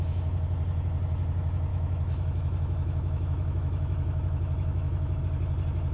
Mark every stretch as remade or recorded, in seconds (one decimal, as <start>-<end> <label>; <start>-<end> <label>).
0.0-1.7 recorded; 1.7-5.2 remade; 5.2-5.9 recorded

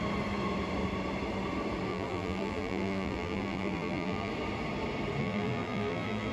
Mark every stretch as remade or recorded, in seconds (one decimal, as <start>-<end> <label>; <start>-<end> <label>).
0.0-1.9 recorded; 1.9-4.3 remade; 4.3-5.2 recorded; 5.2-6.3 remade

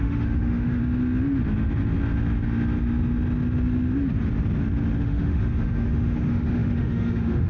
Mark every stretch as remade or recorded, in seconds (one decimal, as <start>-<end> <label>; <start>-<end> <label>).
0.0-0.8 remade; 0.8-5.0 recorded; 5.0-7.5 remade

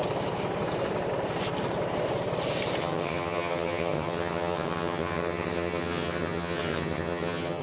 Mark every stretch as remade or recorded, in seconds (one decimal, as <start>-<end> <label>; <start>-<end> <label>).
0.0-2.8 recorded; 2.8-7.6 remade